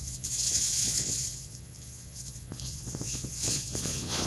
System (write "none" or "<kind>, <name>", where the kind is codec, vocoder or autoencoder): vocoder, Vocos